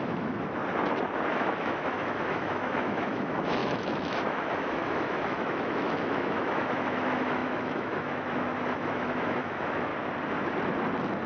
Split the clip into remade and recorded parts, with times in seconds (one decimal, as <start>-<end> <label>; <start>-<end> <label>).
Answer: 0.0-0.6 remade; 0.6-1.3 recorded; 1.3-9.9 remade; 9.9-11.3 recorded